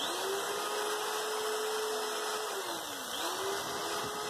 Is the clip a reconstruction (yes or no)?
no